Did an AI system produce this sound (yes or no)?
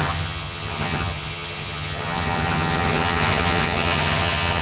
yes